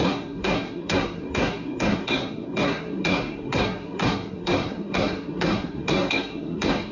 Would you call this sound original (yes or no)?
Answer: no